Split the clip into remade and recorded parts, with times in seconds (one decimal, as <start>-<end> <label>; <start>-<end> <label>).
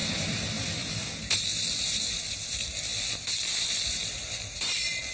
0.0-2.2 recorded; 2.2-5.1 remade